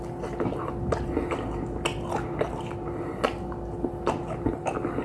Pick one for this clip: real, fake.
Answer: real